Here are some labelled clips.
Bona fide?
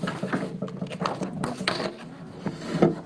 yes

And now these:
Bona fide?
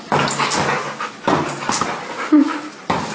yes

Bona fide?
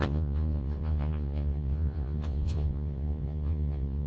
no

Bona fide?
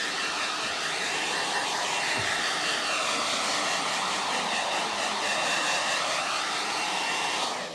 yes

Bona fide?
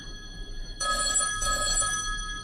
no